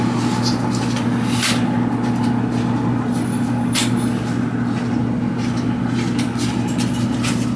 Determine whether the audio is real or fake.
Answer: real